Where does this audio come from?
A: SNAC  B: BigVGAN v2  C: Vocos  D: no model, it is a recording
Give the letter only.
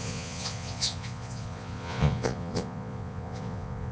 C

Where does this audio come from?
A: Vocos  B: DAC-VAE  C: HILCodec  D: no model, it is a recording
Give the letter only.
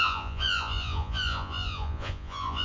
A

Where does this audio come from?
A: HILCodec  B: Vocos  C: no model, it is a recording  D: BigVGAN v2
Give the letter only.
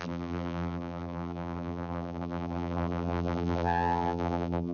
D